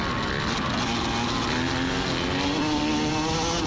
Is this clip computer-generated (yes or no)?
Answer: no